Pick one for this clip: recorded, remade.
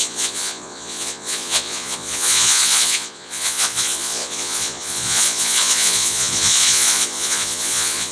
remade